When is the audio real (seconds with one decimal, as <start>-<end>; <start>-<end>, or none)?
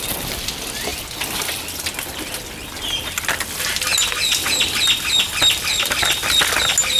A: 0.0-7.0